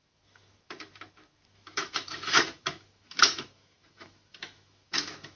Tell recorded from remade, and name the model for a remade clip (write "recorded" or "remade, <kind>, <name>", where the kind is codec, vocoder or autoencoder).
remade, autoencoder, DAC-VAE